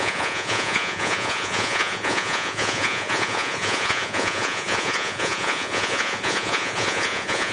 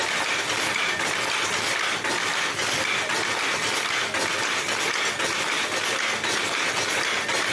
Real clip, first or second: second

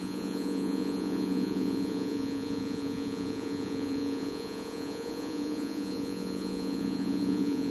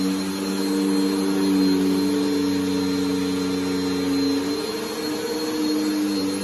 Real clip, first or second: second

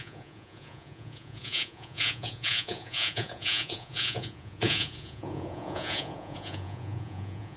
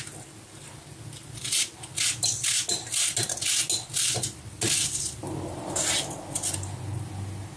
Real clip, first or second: second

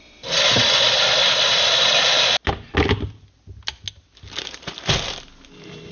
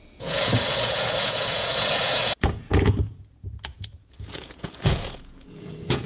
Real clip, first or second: first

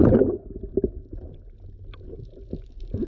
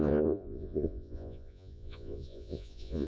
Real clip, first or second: first